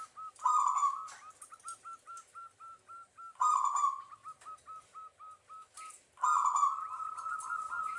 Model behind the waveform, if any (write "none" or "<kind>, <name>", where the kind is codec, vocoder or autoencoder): none